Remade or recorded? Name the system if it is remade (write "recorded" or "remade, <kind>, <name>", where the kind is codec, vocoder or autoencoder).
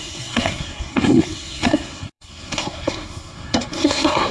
remade, codec, SNAC